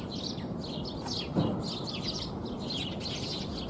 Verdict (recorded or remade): recorded